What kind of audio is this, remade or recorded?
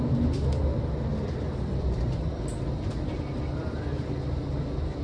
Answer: recorded